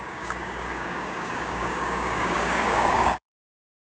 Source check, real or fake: fake